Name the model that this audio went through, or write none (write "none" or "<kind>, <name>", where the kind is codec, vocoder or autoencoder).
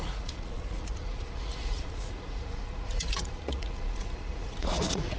vocoder, Vocos